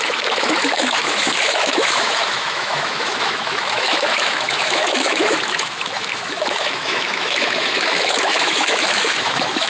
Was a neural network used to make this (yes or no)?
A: yes